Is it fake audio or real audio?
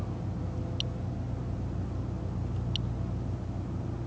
real